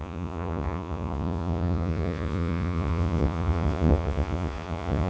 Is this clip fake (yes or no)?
yes